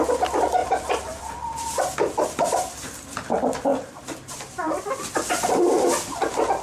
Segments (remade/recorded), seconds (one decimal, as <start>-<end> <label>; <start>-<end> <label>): 0.0-0.6 recorded; 0.6-2.4 remade; 2.4-3.7 recorded; 3.7-5.0 remade; 5.0-6.6 recorded